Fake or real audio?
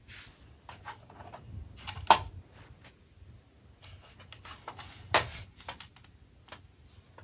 real